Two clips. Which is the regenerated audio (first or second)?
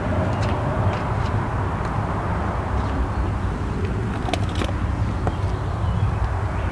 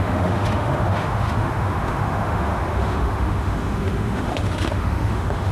second